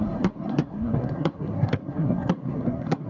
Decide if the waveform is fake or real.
fake